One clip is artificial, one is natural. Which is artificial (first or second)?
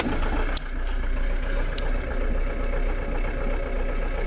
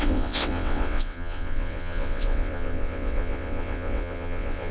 second